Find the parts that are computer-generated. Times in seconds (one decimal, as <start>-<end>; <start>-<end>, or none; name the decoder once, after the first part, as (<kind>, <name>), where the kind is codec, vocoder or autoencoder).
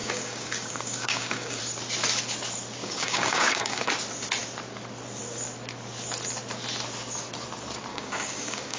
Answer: 0.0-1.6 (codec, DAC); 2.8-3.9; 7.9-8.8